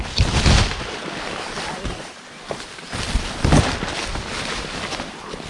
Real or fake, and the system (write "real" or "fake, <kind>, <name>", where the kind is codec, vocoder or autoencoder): real